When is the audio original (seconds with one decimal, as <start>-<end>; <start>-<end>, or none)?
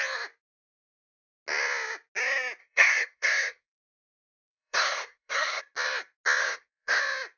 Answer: 0.0-2.6; 5.6-6.4; 7.0-7.4